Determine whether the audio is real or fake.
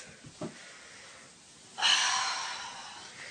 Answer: real